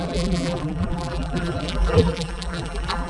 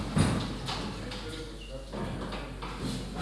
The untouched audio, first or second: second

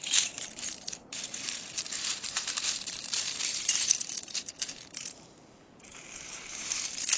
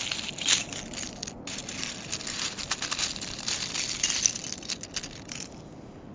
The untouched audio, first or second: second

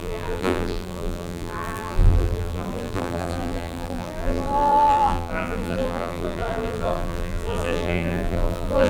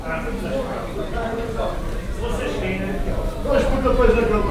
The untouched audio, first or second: second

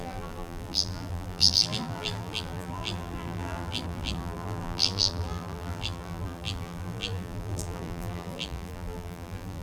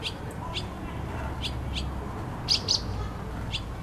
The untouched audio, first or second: second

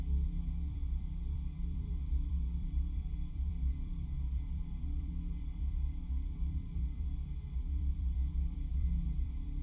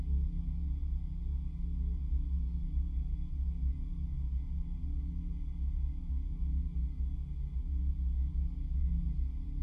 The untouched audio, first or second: second